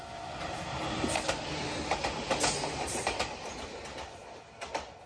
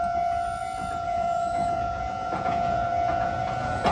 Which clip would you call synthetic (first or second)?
second